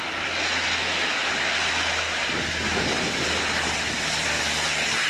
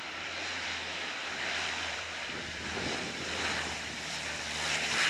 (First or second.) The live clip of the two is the first